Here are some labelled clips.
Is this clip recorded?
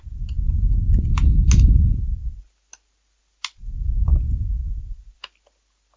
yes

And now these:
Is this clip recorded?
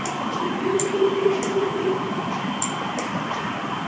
yes